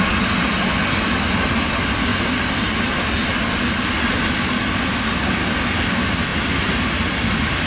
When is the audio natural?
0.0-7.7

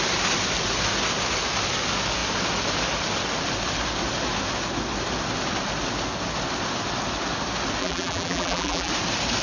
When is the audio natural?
0.0-7.8; 8.9-9.4

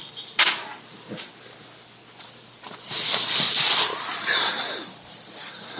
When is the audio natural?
0.7-4.1

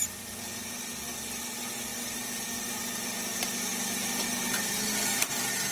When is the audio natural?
0.0-5.7

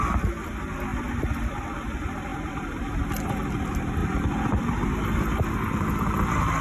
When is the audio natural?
0.0-0.9; 1.6-2.3; 3.0-4.0; 4.6-6.6